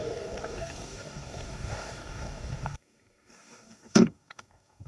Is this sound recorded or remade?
remade